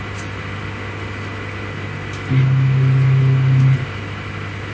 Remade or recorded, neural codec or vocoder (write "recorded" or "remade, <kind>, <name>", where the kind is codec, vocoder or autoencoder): recorded